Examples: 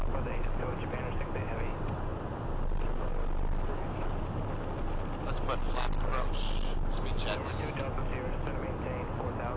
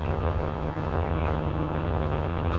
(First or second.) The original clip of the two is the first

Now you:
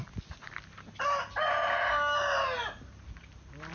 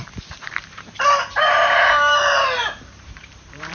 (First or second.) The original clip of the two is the first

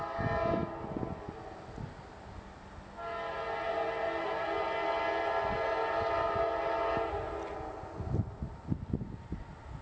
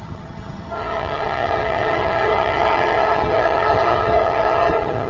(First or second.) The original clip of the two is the first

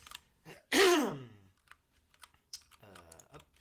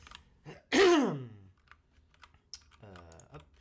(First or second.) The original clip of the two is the second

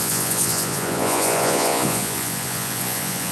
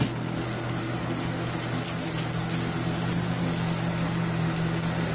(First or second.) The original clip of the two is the second